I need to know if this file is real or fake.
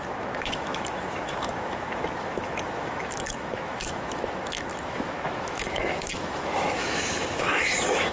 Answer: fake